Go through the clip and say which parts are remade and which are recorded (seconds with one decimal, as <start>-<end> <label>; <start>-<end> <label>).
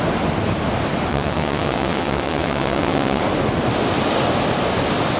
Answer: 0.0-1.1 recorded; 1.1-3.2 remade; 3.2-5.2 recorded